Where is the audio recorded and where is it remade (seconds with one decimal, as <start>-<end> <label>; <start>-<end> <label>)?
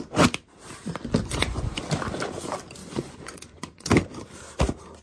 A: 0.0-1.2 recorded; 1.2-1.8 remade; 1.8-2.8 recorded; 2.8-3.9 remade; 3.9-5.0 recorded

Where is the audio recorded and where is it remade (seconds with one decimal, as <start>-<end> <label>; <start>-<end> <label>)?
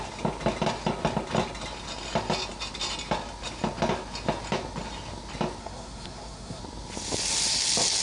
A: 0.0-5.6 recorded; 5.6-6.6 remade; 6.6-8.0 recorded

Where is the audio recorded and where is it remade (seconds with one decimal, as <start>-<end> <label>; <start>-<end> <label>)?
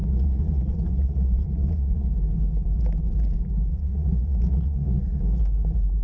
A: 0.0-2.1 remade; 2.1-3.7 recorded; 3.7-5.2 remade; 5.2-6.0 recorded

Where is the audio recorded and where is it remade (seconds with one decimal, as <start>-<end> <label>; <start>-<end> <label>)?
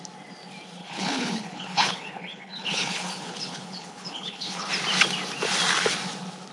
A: 0.0-0.8 recorded; 0.8-4.7 remade; 4.7-6.5 recorded